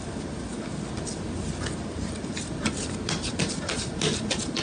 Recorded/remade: recorded